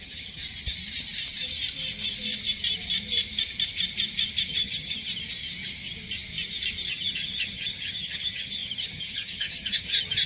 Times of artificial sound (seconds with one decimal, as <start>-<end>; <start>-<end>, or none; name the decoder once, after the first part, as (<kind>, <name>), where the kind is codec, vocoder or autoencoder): 0.0-0.4 (vocoder, HiFi-GAN); 4.5-5.1; 6.9-10.3